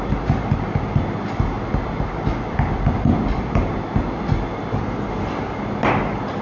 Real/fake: real